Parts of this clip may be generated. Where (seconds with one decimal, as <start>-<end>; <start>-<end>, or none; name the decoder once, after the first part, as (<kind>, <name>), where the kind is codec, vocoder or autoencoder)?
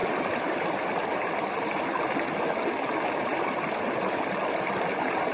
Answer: 0.0-1.5 (vocoder, BigVGAN v2)